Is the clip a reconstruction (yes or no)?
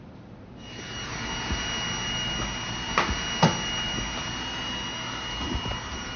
no